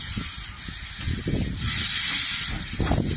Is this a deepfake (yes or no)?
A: no